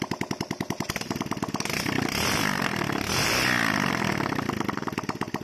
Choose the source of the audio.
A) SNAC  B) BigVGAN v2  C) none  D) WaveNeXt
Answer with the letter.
C